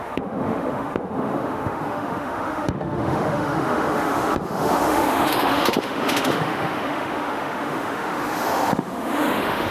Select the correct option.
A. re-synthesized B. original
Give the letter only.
A